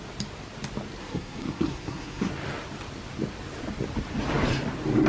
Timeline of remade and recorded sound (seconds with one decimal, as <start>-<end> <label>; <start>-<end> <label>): 0.0-1.0 recorded; 1.0-2.3 remade; 2.3-5.1 recorded